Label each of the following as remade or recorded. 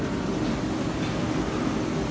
recorded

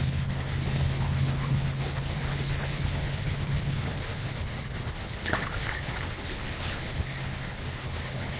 remade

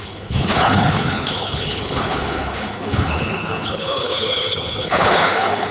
remade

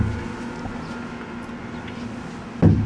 recorded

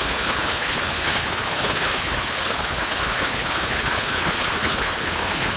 remade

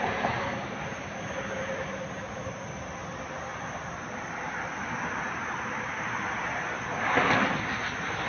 recorded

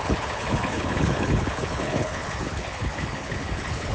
remade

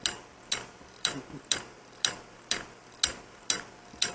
recorded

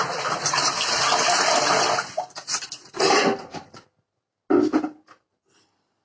recorded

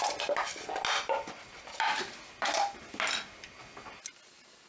recorded